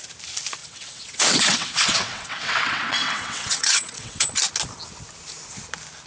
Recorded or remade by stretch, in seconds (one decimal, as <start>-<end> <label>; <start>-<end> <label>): 0.0-0.6 recorded; 0.6-4.3 remade; 4.3-6.1 recorded